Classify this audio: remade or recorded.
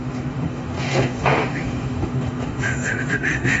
remade